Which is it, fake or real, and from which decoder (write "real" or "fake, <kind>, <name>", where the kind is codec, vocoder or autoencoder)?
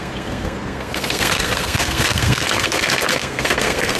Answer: fake, codec, SNAC